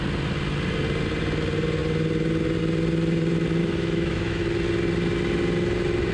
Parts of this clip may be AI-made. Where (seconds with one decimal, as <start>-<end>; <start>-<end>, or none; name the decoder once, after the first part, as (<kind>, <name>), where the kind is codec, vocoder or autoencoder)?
3.6-4.4 (autoencoder, DAC-VAE)

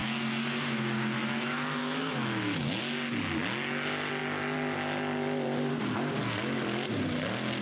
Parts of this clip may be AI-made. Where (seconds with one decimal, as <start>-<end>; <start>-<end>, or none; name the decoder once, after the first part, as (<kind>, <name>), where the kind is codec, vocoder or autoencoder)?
0.0-2.8 (autoencoder, DAC-VAE)

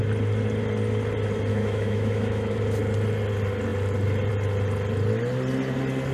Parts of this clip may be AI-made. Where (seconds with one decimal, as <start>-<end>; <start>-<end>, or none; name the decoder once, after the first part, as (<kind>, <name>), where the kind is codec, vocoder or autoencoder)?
1.5-2.6 (autoencoder, DAC-VAE)

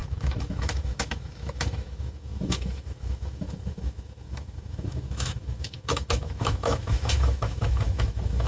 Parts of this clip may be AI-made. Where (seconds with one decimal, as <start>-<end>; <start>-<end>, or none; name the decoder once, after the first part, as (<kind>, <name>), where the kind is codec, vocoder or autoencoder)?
0.0-8.5 (autoencoder, DAC-VAE)

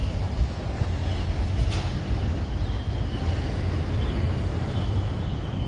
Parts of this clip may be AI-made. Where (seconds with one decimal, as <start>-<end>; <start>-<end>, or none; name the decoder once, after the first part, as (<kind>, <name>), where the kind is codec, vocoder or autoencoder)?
0.0-0.6 (autoencoder, DAC-VAE)

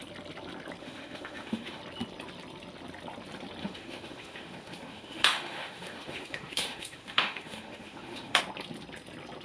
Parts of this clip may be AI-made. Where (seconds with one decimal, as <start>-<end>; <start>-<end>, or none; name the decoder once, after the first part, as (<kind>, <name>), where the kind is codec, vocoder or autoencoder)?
0.8-1.8 (autoencoder, DAC-VAE); 3.6-8.4

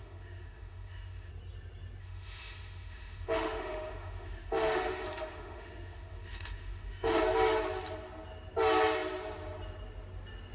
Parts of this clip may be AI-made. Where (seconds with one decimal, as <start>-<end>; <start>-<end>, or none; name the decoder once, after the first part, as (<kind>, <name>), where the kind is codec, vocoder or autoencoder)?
0.0-1.3 (autoencoder, DAC-VAE); 2.0-7.2

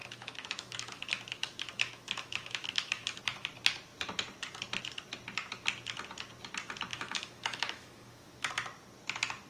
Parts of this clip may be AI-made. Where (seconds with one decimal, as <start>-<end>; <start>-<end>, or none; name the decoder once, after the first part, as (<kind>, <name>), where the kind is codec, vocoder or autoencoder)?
0.0-3.2 (autoencoder, DAC-VAE); 6.9-8.5